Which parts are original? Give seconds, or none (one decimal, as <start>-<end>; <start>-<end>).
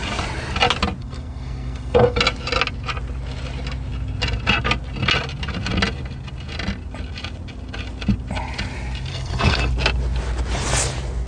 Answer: 0.0-1.0; 2.2-9.1; 9.7-11.3